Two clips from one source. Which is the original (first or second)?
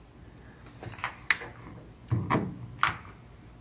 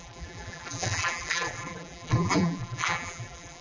first